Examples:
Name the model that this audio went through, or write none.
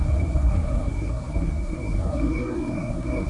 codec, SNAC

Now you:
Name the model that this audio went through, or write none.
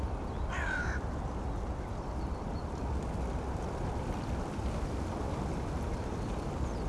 vocoder, BigVGAN v2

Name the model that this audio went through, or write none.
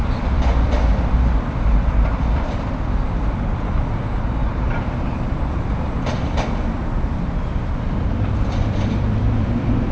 vocoder, BigVGAN v2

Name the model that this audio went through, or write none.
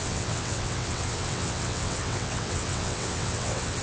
vocoder, WaveNeXt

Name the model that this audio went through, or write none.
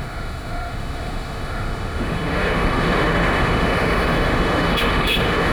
autoencoder, DAC-VAE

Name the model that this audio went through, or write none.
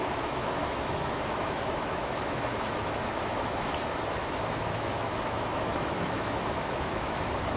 autoencoder, DAC-VAE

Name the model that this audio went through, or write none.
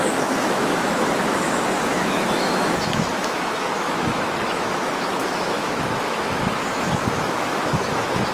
autoencoder, DAC-VAE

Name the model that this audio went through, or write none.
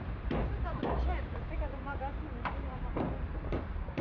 vocoder, BigVGAN v2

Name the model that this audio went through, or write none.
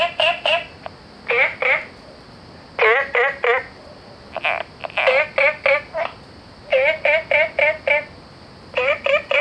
none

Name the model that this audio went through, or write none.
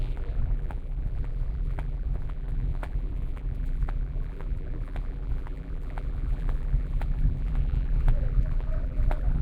vocoder, BigVGAN v2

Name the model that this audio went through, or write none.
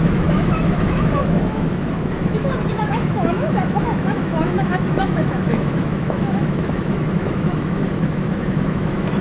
autoencoder, DAC-VAE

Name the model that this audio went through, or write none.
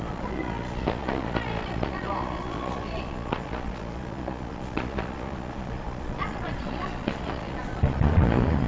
vocoder, Vocos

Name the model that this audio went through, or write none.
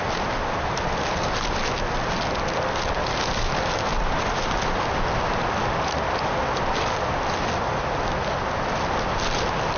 none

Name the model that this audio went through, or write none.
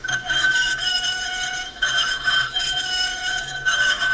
autoencoder, DAC-VAE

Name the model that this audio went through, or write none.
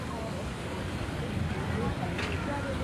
codec, DAC